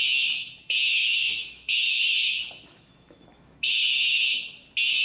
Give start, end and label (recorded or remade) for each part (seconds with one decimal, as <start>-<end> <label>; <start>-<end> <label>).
0.0-0.9 recorded; 0.9-3.9 remade; 3.9-5.0 recorded